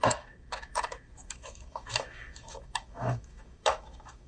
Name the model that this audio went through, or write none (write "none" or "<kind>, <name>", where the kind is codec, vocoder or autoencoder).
autoencoder, DAC-VAE